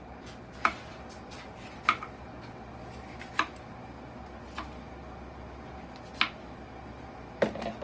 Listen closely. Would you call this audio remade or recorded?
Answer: recorded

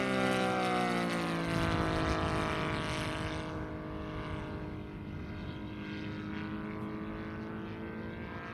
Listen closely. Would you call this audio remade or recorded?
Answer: recorded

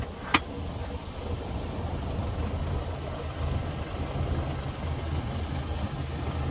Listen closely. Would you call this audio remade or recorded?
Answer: recorded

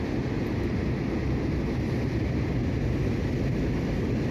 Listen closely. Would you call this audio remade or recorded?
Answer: recorded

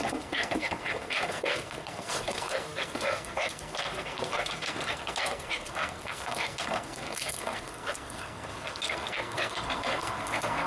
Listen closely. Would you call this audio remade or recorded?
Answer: remade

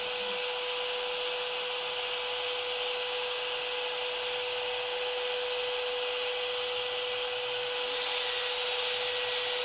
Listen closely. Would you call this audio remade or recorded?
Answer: recorded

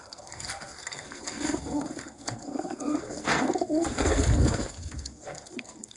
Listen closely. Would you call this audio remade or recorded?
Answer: remade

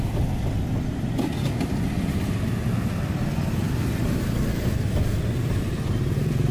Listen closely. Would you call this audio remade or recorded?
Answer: recorded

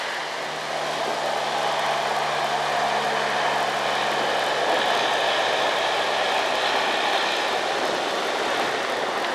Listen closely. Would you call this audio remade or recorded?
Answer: recorded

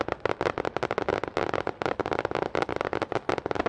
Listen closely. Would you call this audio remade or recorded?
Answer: recorded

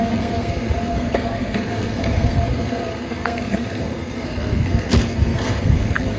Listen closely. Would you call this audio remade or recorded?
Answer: remade